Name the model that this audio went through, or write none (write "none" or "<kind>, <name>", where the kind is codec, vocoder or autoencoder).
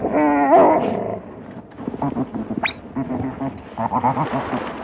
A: none